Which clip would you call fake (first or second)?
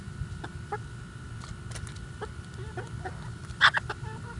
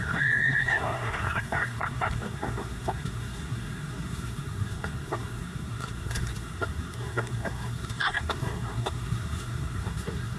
second